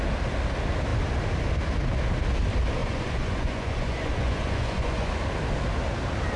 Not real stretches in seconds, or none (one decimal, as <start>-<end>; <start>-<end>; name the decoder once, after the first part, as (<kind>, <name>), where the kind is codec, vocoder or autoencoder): 2.8-5.1 (vocoder, Vocos)